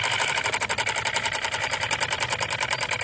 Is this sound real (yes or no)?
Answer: yes